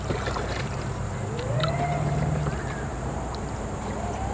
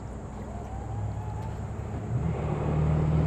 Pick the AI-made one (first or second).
first